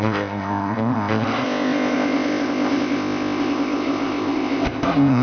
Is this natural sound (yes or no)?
no